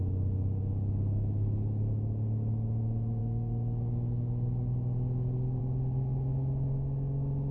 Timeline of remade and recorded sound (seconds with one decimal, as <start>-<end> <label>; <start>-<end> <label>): 0.0-7.5 recorded